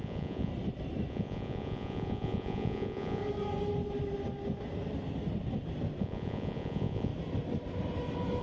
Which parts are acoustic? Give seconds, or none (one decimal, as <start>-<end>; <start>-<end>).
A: 0.5-1.1; 3.2-6.0; 7.1-8.4